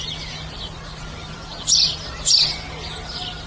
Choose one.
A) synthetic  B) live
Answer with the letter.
B